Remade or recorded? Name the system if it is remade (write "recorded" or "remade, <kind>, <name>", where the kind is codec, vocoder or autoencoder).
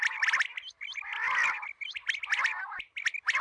recorded